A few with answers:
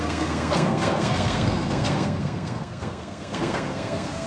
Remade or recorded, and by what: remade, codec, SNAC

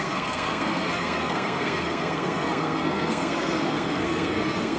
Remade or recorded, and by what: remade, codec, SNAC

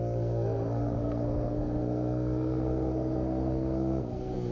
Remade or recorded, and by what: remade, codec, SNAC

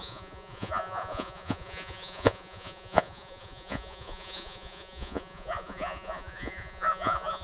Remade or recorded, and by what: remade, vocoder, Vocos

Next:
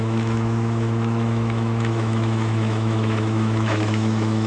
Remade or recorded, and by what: remade, autoencoder, DAC-VAE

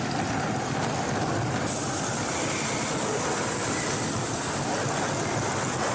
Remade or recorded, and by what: recorded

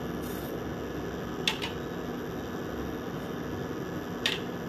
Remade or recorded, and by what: recorded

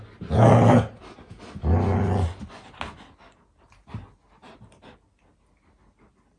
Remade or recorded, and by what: recorded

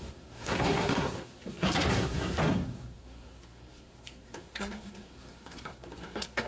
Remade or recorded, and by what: remade, codec, SNAC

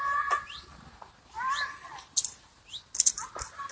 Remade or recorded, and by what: recorded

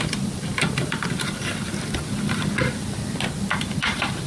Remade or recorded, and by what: recorded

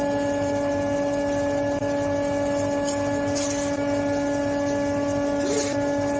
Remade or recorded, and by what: recorded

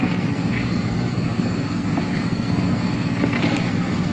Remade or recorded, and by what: remade, codec, SNAC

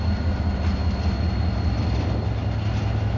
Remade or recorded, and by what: recorded